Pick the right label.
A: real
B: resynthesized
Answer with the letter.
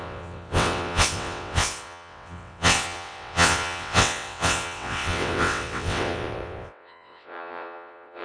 B